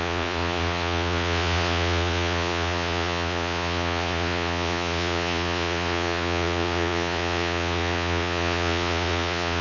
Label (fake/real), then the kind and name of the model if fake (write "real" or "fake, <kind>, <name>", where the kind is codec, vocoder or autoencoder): fake, vocoder, Vocos